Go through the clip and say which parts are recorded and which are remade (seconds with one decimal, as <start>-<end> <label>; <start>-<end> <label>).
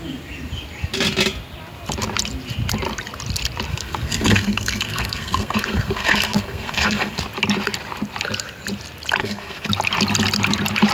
0.0-3.7 recorded; 3.7-7.2 remade; 7.2-9.2 recorded; 9.2-9.7 remade; 9.7-10.9 recorded